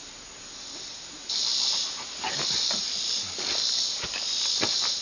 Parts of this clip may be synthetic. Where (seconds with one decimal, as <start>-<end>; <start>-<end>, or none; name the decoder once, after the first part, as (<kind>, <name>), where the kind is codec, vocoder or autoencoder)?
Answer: none